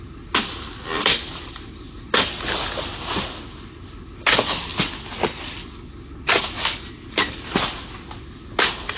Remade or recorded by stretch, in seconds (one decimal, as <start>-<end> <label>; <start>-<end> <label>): 0.0-9.0 recorded